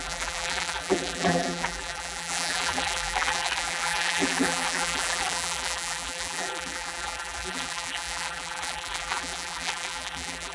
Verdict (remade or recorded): remade